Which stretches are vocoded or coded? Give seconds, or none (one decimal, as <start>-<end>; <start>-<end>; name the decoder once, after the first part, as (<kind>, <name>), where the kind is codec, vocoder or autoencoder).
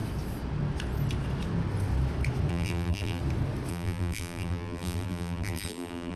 2.5-3.2 (vocoder, BigVGAN v2); 3.7-6.2